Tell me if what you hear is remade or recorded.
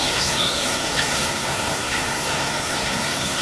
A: remade